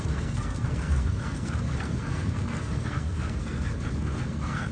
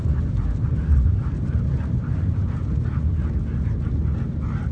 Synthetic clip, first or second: first